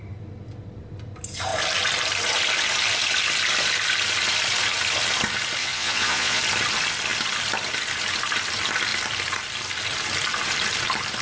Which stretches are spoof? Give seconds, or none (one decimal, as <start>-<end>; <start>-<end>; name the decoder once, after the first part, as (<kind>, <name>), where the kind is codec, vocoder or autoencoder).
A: 5.6-6.4 (vocoder, Vocos)